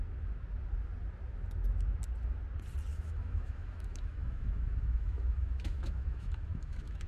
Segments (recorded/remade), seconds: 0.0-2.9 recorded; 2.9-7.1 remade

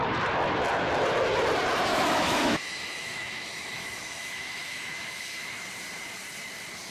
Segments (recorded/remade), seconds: 0.0-1.9 recorded; 1.9-5.7 remade; 5.7-6.9 recorded

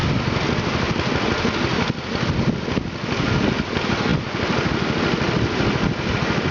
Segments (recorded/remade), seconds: 0.0-6.5 recorded